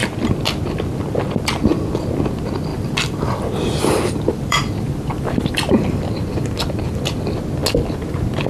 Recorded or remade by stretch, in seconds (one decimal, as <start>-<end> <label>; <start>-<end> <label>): 0.0-2.7 recorded; 2.7-6.0 remade; 6.0-8.5 recorded